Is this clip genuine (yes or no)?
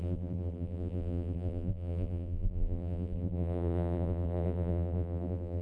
no